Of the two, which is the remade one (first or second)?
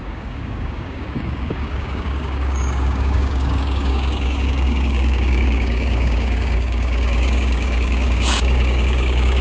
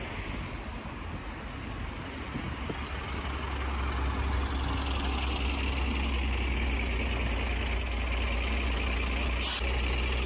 first